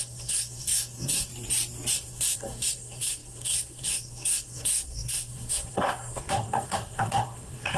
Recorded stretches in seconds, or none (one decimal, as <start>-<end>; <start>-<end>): 1.3-1.9